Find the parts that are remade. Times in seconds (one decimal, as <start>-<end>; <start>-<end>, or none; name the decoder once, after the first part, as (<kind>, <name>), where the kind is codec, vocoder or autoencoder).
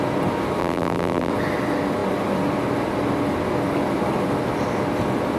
0.6-1.3 (vocoder, BigVGAN v2)